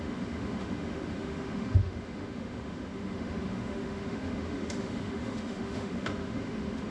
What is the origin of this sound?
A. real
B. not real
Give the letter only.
B